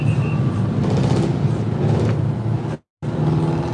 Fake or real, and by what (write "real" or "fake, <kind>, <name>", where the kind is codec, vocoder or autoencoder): real